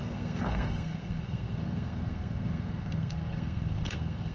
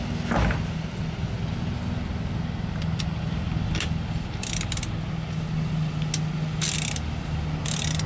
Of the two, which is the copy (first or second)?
first